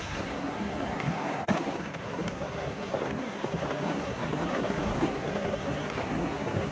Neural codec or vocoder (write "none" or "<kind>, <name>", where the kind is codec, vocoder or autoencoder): codec, SNAC